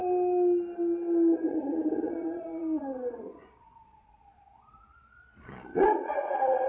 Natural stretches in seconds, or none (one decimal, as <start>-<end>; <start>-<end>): 0.0-1.5